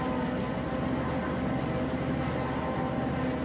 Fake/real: real